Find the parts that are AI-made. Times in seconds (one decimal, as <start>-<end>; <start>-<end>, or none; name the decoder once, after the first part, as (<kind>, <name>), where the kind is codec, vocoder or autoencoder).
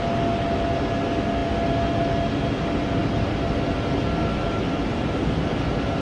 none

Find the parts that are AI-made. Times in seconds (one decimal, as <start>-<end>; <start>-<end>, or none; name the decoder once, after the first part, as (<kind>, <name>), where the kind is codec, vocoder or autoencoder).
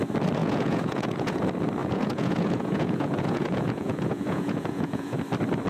0.4-1.4 (vocoder, Vocos); 1.8-5.2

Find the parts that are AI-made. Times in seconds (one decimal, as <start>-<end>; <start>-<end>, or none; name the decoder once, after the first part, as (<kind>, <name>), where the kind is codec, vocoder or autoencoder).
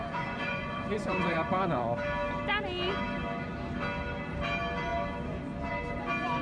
0.0-1.8 (vocoder, Vocos)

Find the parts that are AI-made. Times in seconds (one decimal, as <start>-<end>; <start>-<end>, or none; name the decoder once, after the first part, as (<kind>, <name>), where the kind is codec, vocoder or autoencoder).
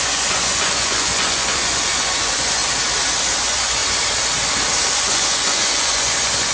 0.0-2.6 (vocoder, Vocos); 3.4-3.8; 4.9-6.5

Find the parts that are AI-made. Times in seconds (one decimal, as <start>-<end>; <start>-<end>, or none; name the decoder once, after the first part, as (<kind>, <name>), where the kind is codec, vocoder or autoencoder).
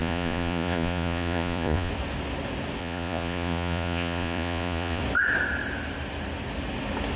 0.0-1.9 (vocoder, Vocos); 2.8-5.0